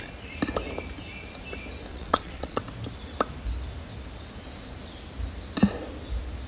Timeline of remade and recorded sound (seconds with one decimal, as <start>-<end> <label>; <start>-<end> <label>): 0.0-1.9 recorded; 1.9-2.6 remade; 2.6-6.5 recorded